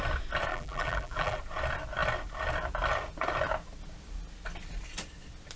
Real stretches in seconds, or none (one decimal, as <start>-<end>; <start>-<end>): 0.0-0.5; 1.4-5.6